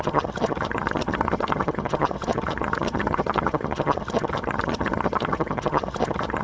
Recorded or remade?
remade